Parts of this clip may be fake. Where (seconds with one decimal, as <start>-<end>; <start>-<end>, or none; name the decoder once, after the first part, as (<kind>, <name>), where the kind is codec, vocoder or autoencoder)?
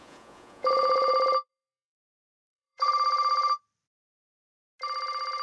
0.0-1.1 (vocoder, Vocos); 1.5-2.9